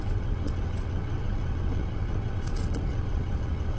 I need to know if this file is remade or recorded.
remade